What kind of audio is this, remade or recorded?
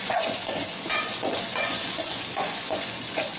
remade